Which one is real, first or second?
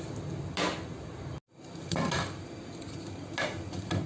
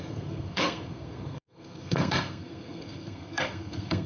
first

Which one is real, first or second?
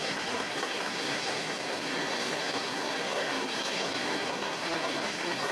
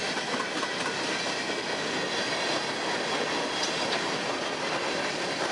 second